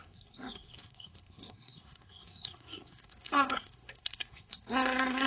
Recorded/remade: remade